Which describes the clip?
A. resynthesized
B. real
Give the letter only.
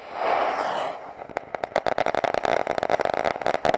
B